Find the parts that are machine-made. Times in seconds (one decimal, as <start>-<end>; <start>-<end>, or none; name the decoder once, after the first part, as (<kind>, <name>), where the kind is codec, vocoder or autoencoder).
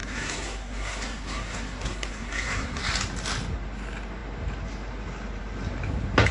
0.0-2.8 (codec, SNAC)